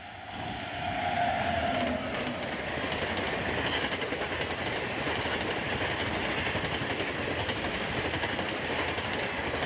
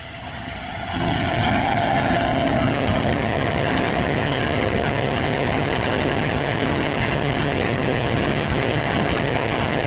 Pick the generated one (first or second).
second